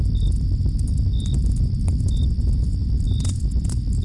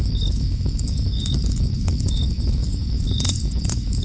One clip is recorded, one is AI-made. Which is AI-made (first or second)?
second